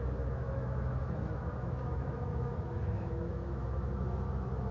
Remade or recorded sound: remade